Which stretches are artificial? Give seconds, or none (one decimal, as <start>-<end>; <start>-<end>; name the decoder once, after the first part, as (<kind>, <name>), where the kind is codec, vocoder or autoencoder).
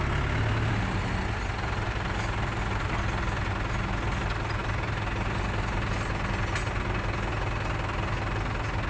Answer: none